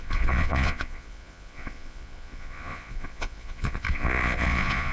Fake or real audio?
fake